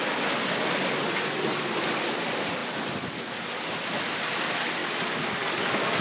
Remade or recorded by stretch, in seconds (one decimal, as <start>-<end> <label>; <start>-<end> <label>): 0.0-6.0 recorded